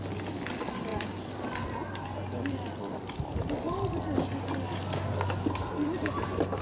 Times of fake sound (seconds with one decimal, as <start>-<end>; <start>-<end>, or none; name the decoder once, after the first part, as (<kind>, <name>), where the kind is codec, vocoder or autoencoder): none